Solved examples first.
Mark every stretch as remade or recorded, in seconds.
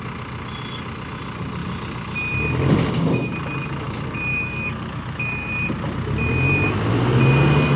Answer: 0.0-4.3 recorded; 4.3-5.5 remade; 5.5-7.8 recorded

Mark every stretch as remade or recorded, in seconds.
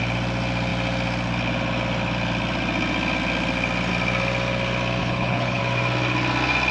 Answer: 0.0-5.0 recorded; 5.0-5.6 remade; 5.6-6.7 recorded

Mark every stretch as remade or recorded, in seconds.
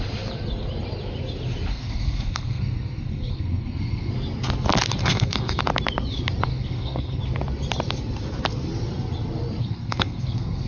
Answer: 0.0-1.7 recorded; 1.7-4.1 remade; 4.1-5.0 recorded; 5.0-5.6 remade; 5.6-6.5 recorded; 6.5-7.2 remade; 7.2-9.6 recorded; 9.6-10.7 remade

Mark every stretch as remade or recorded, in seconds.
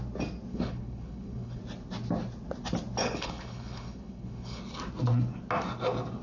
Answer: 0.0-0.5 recorded; 0.5-1.6 remade; 1.6-3.0 recorded; 3.0-4.6 remade; 4.6-6.2 recorded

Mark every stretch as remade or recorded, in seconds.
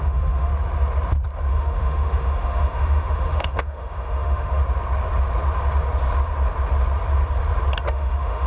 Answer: 0.0-0.5 remade; 0.5-1.5 recorded; 1.5-4.6 remade; 4.6-7.9 recorded; 7.9-8.5 remade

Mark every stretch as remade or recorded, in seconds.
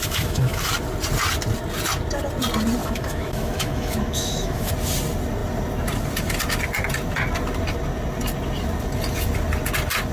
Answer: 0.0-0.7 remade; 0.7-2.8 recorded; 2.8-4.7 remade; 4.7-10.1 recorded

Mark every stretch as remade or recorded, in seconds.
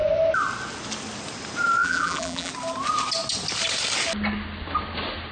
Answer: 0.0-1.8 recorded; 1.8-2.5 remade; 2.5-5.3 recorded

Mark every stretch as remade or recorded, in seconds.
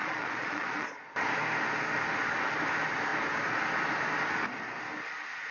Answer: 0.0-1.1 remade; 1.1-5.5 recorded